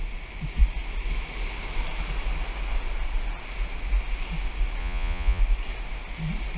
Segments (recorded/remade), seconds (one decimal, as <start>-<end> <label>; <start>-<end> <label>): 0.0-4.8 recorded; 4.8-5.4 remade; 5.4-6.6 recorded

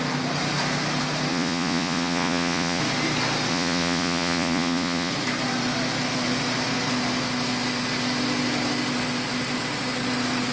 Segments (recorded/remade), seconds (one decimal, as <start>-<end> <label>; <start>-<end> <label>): 0.0-1.3 recorded; 1.3-2.8 remade; 2.8-3.5 recorded; 3.5-5.1 remade; 5.1-10.5 recorded

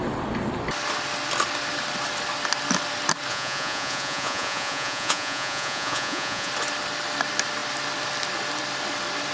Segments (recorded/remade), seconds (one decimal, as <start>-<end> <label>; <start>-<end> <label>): 0.0-3.3 recorded; 3.3-6.5 remade; 6.5-9.3 recorded

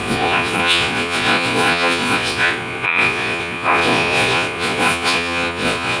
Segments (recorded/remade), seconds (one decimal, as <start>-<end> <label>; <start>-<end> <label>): 0.0-6.0 remade

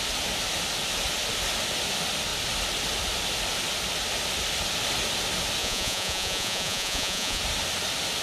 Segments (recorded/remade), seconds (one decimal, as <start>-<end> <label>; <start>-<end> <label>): 0.0-5.6 recorded; 5.6-7.4 remade; 7.4-8.2 recorded

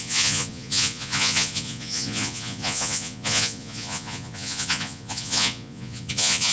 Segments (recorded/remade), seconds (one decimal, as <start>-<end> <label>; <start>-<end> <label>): 0.0-6.5 remade